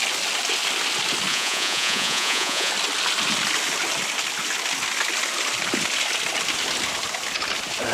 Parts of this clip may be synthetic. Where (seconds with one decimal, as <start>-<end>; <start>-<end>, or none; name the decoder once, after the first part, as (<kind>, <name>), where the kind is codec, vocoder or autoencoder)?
1.3-2.7 (vocoder, Vocos)

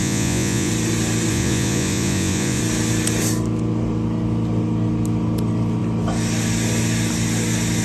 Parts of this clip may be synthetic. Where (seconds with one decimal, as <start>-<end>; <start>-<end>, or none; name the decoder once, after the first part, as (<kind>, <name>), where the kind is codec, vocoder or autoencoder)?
0.0-0.7 (vocoder, Vocos); 1.3-2.6

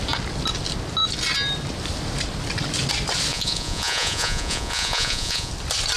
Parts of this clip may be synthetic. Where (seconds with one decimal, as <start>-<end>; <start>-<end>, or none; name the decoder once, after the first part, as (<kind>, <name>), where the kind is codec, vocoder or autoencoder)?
3.3-5.5 (vocoder, Vocos)

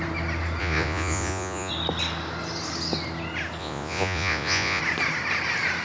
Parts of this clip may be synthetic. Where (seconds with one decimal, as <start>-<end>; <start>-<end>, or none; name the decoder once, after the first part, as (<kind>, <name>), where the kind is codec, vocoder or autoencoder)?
0.6-1.7 (vocoder, Vocos); 3.6-4.8

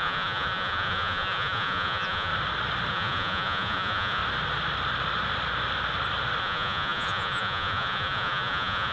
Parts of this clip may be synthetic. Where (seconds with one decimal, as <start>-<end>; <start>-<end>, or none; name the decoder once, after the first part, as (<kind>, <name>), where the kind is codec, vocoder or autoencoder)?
0.0-2.3 (vocoder, Vocos); 2.9-4.2; 6.4-8.9

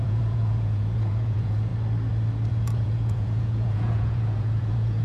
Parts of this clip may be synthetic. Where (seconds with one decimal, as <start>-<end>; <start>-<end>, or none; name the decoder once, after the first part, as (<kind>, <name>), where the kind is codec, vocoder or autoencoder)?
0.0-1.7 (vocoder, Vocos); 2.5-5.0

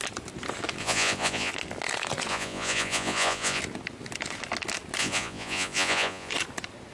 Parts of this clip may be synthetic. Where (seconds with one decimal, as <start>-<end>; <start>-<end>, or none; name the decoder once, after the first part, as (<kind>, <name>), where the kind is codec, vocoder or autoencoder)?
0.8-1.5 (vocoder, Vocos); 2.3-3.6; 5.0-6.3